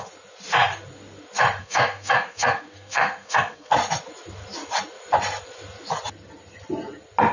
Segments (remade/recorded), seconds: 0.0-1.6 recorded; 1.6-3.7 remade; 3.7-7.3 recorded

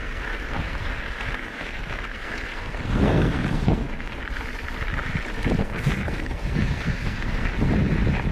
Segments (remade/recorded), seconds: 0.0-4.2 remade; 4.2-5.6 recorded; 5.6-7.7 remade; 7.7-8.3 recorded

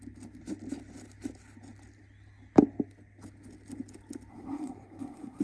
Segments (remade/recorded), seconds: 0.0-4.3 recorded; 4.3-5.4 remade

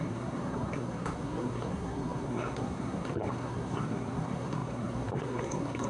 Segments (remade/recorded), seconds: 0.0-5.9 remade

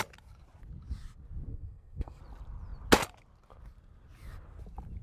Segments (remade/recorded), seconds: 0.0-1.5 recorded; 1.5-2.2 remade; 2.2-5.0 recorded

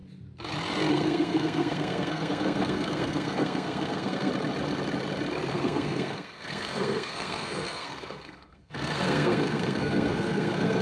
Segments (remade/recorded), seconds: 0.0-0.9 recorded; 0.9-4.3 remade; 4.3-5.5 recorded; 5.5-10.8 remade

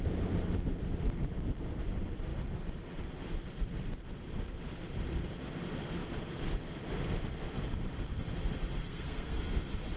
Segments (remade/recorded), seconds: 0.0-8.8 recorded; 8.8-9.4 remade; 9.4-10.0 recorded